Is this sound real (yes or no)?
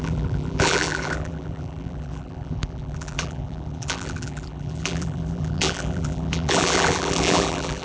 no